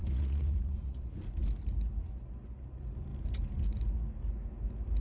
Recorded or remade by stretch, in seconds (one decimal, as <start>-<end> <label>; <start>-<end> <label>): 0.0-1.2 remade; 1.2-5.0 recorded